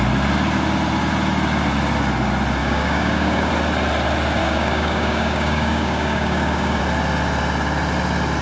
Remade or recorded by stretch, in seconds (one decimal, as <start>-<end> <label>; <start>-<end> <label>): 0.0-2.6 recorded; 2.6-3.5 remade; 3.5-4.4 recorded; 4.4-6.8 remade; 6.8-8.4 recorded